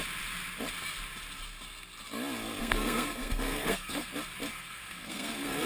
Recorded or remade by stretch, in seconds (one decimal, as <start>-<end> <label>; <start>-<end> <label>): 0.0-2.6 recorded; 2.6-4.1 remade; 4.1-4.5 recorded; 4.5-5.7 remade